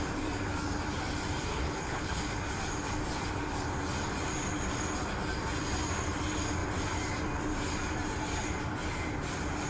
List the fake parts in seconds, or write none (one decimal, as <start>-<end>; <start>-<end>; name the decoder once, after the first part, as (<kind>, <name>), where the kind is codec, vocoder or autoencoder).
1.5-2.2 (codec, HILCodec)